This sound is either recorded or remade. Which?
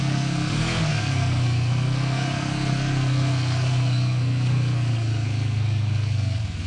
remade